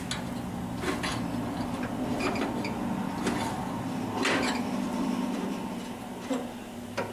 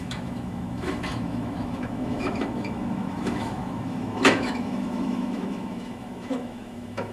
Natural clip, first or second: first